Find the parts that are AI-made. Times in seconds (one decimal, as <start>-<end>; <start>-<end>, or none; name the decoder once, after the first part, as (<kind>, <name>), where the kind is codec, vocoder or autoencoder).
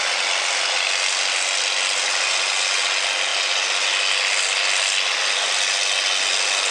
none